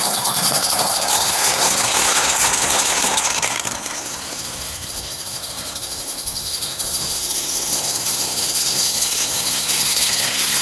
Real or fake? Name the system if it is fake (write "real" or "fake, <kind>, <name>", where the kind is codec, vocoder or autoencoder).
fake, codec, SNAC